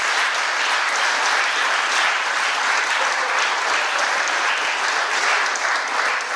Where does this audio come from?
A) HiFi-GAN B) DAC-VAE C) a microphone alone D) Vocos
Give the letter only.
C